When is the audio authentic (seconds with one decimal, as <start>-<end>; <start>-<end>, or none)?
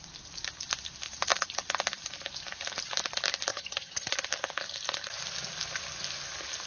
0.0-3.5; 4.1-6.7